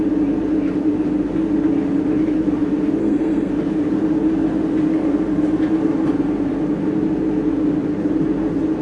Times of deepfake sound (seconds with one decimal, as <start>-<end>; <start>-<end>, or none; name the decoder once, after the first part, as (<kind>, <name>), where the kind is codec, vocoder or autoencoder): 3.0-3.5 (codec, SNAC)